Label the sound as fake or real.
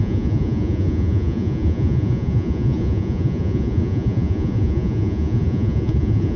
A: fake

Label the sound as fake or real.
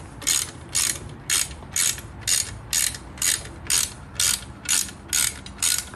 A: real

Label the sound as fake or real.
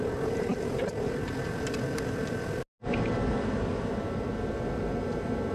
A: real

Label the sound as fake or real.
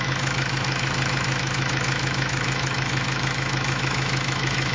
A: fake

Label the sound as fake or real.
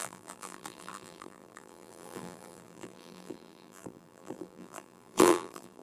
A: fake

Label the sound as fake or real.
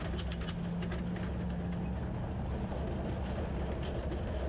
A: real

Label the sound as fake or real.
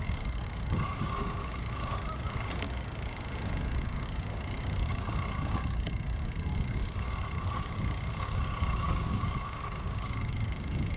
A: fake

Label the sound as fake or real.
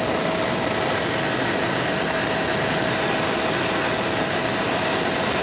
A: real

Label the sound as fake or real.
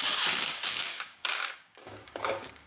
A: fake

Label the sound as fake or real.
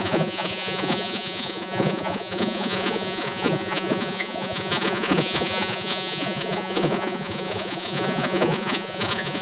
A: fake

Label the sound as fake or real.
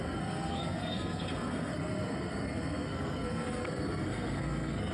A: fake